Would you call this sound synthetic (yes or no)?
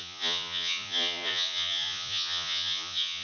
yes